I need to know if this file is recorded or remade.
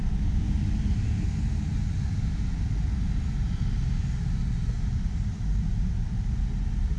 recorded